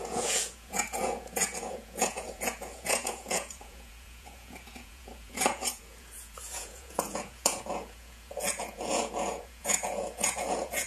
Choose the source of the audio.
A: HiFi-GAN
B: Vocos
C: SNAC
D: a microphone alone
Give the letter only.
B